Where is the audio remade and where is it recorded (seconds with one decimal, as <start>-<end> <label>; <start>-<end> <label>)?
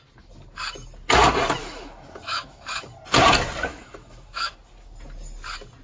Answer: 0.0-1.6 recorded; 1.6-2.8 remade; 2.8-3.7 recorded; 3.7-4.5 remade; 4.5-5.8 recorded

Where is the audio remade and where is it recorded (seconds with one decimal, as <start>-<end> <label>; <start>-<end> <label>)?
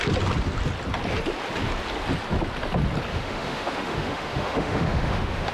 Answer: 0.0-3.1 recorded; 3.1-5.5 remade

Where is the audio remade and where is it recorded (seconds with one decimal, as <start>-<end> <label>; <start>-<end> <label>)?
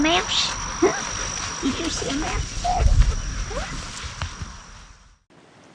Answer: 0.0-5.7 recorded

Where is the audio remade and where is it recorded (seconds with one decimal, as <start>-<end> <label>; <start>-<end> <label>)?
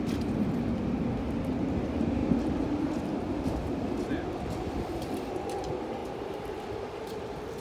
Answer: 0.0-7.6 recorded